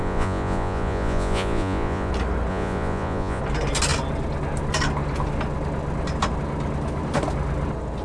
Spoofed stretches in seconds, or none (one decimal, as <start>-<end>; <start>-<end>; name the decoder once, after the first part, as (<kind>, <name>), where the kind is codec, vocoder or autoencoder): 0.0-2.1 (vocoder, Vocos); 2.5-3.4